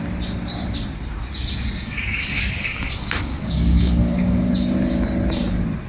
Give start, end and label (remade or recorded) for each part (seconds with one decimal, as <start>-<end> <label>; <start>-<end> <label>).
0.0-1.8 recorded; 1.8-4.5 remade; 4.5-5.9 recorded